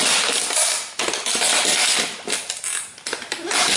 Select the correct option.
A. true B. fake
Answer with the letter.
A